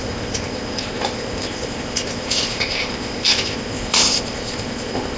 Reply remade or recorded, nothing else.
remade